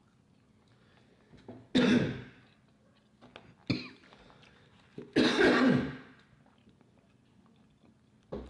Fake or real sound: real